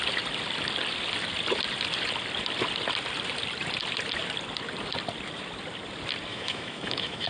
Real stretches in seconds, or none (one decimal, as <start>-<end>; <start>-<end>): 0.0-6.3